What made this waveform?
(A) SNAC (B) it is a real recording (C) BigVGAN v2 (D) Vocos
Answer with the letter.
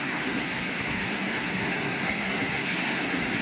A